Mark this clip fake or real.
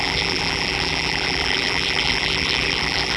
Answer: fake